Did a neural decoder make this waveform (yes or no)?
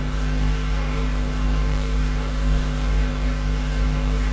yes